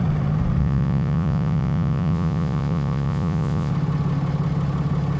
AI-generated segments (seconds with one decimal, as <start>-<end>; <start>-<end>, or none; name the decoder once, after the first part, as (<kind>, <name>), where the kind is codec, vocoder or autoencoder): 0.6-3.7 (vocoder, Vocos)